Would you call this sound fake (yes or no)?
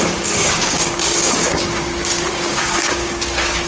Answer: yes